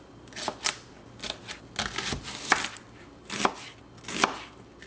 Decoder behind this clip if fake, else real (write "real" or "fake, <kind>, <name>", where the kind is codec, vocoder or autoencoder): real